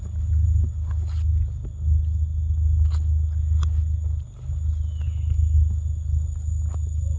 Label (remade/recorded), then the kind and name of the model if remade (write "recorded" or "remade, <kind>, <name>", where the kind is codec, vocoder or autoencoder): recorded